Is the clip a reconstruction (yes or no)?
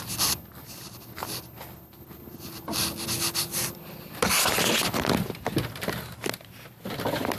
no